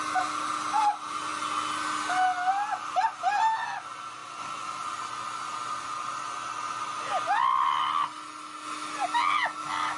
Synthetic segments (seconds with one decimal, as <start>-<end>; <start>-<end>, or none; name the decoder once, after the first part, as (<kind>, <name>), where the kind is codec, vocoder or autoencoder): none